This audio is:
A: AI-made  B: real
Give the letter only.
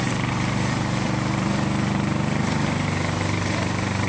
A